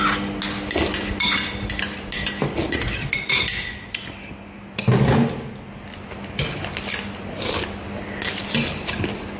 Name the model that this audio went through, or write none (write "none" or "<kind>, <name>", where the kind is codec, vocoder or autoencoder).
none